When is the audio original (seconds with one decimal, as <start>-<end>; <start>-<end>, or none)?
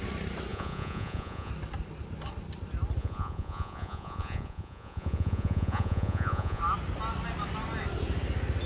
0.0-0.5; 1.5-3.0; 6.6-8.7